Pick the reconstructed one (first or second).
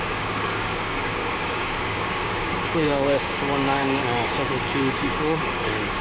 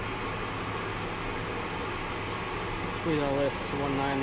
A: first